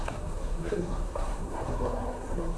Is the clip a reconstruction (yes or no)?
yes